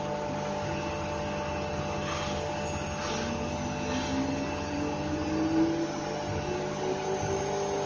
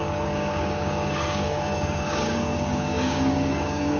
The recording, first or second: first